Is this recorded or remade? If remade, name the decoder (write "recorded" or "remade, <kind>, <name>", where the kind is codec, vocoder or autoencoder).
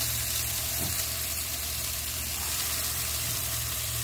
remade, vocoder, BigVGAN v2